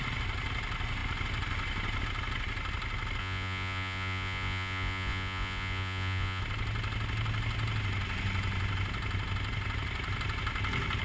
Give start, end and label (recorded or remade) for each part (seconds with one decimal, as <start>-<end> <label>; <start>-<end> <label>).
0.0-3.2 recorded; 3.2-6.4 remade; 6.4-11.0 recorded